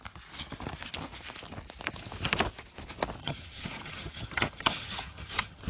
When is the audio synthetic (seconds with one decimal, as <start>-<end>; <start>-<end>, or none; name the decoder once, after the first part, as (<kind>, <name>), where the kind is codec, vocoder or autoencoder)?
3.2-5.7 (vocoder, HiFi-GAN)